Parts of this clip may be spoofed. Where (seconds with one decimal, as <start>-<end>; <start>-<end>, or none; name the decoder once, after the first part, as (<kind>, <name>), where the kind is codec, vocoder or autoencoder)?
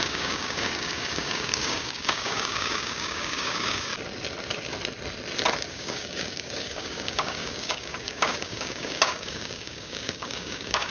0.0-3.9 (codec, DAC); 5.7-10.9